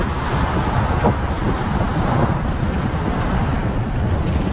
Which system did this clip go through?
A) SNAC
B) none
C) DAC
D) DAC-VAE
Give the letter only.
B